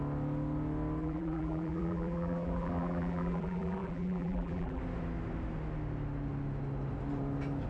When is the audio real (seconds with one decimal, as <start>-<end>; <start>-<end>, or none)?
0.0-1.0; 4.8-7.7